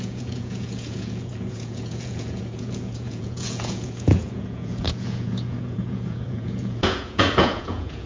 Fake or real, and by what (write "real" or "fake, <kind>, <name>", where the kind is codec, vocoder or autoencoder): fake, vocoder, Vocos